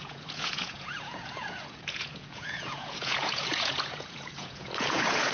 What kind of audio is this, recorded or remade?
remade